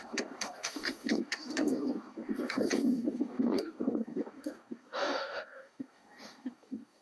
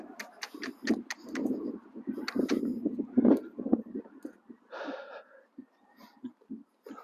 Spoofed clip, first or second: first